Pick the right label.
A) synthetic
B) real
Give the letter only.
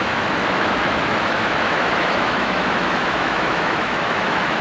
A